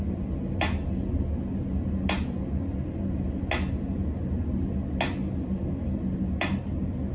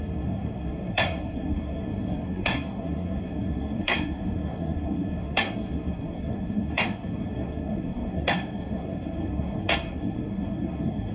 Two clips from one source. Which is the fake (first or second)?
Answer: second